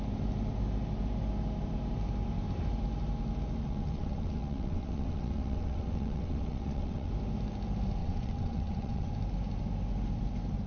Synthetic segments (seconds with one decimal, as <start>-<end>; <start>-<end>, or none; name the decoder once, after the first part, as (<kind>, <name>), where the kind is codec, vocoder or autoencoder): 3.6-7.1 (vocoder, WaveNeXt); 8.0-9.1